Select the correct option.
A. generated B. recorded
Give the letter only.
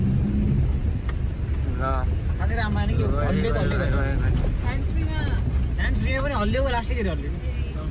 B